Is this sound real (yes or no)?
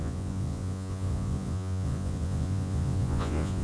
no